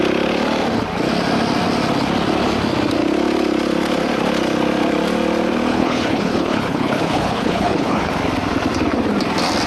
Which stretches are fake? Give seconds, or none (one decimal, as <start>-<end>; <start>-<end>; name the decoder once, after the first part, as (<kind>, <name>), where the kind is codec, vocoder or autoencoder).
5.7-8.1 (codec, HILCodec)